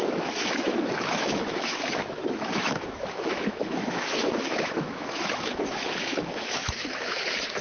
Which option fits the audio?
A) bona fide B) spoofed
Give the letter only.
B